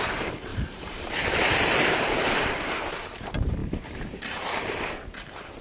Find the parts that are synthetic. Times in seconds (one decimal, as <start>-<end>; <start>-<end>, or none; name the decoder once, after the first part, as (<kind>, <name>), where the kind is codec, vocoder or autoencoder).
0.5-2.6 (vocoder, BigVGAN v2); 3.6-4.8